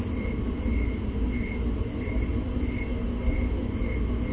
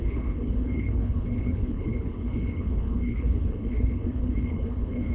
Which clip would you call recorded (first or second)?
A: first